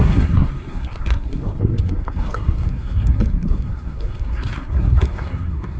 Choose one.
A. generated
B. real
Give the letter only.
A